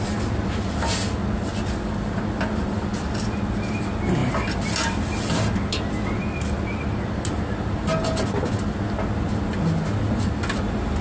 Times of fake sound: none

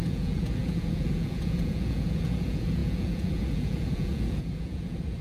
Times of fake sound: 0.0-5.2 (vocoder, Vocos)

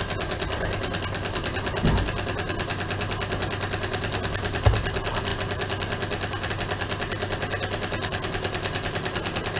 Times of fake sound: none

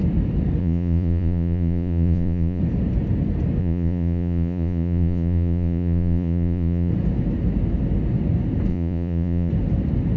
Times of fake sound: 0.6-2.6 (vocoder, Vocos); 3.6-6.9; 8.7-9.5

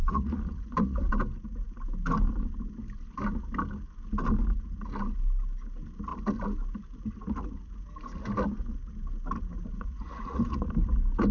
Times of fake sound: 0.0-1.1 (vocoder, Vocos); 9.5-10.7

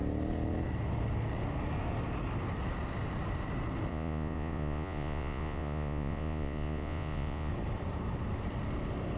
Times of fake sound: 3.9-7.5 (vocoder, Vocos)

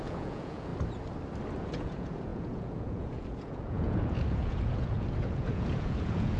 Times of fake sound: 0.0-0.7 (vocoder, Vocos); 1.6-6.4